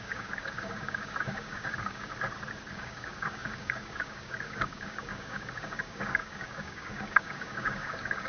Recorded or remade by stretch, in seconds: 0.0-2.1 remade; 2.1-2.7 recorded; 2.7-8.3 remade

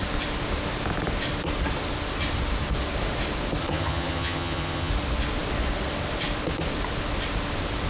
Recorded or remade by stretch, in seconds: 0.0-3.6 recorded; 3.6-4.9 remade; 4.9-7.9 recorded

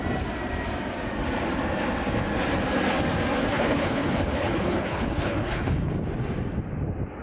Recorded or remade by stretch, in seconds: 0.0-3.4 recorded; 3.4-5.9 remade; 5.9-7.2 recorded

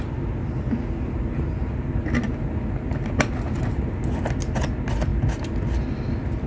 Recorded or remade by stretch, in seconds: 0.0-6.5 recorded

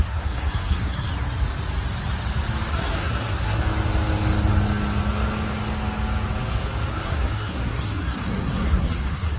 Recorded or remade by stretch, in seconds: 0.0-1.1 remade; 1.1-2.7 recorded; 2.7-3.6 remade; 3.6-6.9 recorded; 6.9-9.4 remade

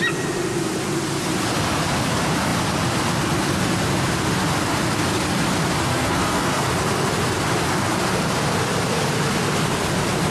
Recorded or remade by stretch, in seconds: 0.0-5.9 recorded; 5.9-6.7 remade; 6.7-10.3 recorded

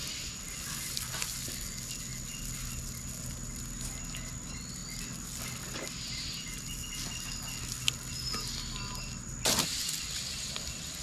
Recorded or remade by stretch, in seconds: 0.0-11.0 recorded

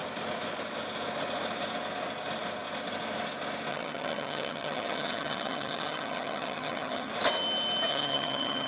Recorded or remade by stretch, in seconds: 0.0-3.7 recorded; 3.7-7.1 remade; 7.1-7.9 recorded; 7.9-8.7 remade